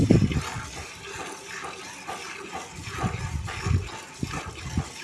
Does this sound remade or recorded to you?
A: recorded